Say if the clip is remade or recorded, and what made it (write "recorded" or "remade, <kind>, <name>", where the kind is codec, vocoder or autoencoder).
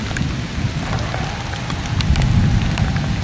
recorded